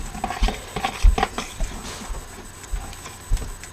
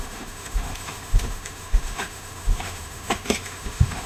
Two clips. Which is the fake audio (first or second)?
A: second